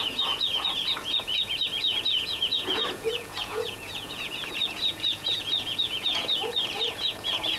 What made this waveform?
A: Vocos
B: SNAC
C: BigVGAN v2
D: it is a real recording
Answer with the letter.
A